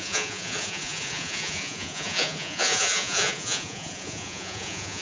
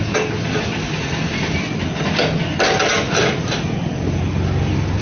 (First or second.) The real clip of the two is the second